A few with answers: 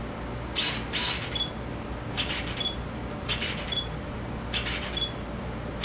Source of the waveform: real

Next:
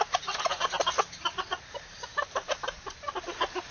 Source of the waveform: real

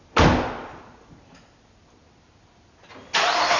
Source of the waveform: real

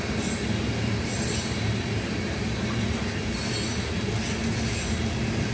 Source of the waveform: real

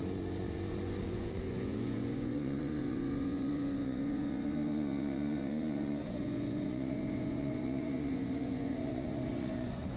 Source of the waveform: fake